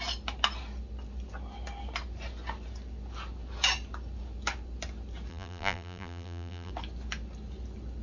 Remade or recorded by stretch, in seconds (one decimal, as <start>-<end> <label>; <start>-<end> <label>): 0.0-5.3 recorded; 5.3-6.7 remade; 6.7-8.0 recorded